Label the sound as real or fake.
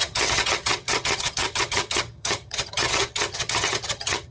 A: fake